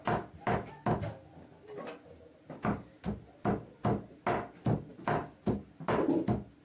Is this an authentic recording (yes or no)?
yes